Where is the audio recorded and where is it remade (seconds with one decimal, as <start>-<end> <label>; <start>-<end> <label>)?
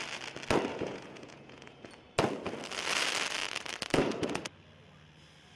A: 0.0-0.7 recorded; 0.7-1.9 remade; 1.9-5.6 recorded